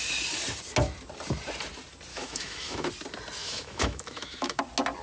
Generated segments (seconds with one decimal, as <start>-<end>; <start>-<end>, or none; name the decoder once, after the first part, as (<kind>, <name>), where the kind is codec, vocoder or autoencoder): 2.1-2.9 (autoencoder, DAC-VAE); 3.4-4.6